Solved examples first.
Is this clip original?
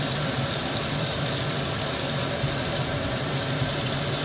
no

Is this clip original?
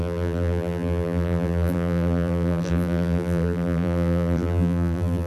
no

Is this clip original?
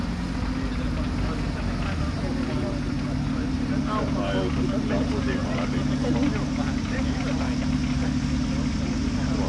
yes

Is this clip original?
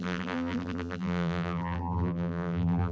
no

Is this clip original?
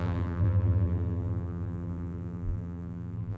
no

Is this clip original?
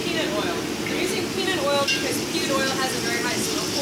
yes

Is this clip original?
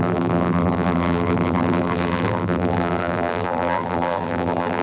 no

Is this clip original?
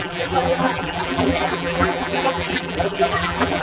no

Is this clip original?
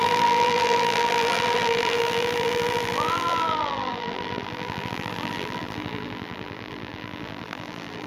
no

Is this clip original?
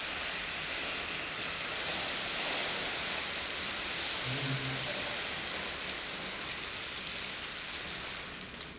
yes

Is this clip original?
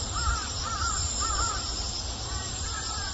no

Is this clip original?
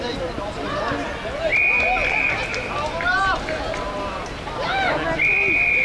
yes